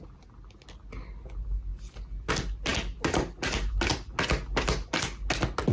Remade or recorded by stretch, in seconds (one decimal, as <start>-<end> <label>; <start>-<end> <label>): 0.0-5.7 recorded